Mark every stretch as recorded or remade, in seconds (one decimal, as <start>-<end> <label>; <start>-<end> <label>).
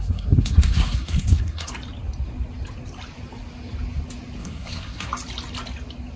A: 0.0-1.7 remade; 1.7-4.4 recorded; 4.4-5.1 remade; 5.1-6.2 recorded